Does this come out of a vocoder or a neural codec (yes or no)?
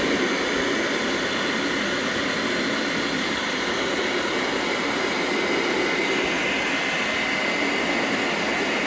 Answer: no